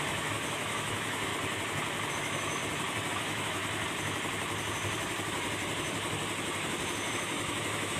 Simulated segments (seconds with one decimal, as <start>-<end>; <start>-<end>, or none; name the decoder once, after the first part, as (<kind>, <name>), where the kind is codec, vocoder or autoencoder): 0.0-1.3 (autoencoder, DAC-VAE); 2.1-2.6; 3.1-3.6; 7.1-8.0